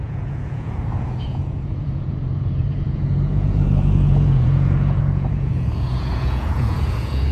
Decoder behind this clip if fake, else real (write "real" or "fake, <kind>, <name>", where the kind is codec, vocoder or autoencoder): fake, vocoder, Vocos